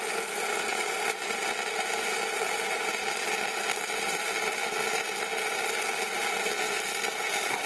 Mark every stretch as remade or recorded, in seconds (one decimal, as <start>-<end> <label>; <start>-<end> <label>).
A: 0.0-3.0 remade; 3.0-6.4 recorded; 6.4-7.7 remade